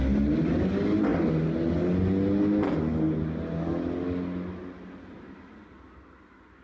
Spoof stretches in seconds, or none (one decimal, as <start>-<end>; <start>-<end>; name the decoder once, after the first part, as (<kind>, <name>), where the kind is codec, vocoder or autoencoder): none